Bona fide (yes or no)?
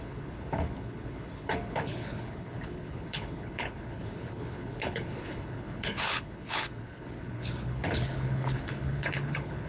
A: no